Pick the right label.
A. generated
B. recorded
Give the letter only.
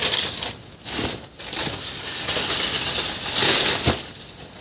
B